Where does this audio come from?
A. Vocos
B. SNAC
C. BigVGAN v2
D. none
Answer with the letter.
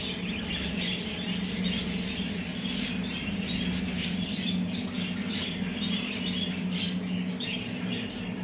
D